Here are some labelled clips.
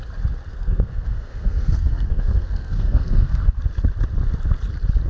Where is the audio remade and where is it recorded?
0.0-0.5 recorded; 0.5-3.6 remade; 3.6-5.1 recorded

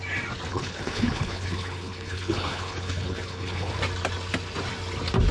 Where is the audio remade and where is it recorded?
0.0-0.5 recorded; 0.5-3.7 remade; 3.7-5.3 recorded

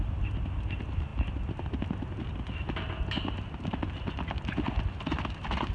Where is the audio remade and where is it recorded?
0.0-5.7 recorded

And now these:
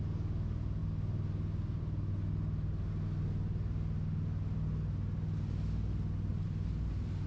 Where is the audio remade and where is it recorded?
0.0-6.3 recorded; 6.3-7.3 remade

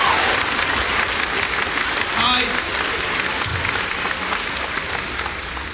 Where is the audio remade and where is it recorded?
0.0-5.7 recorded

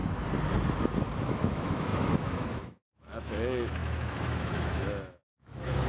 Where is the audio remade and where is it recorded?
0.0-1.2 recorded; 1.2-5.9 remade

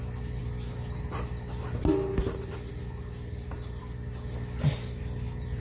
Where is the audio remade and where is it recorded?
0.0-5.6 recorded